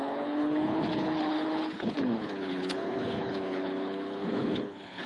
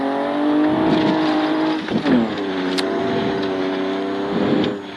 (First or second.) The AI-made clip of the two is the first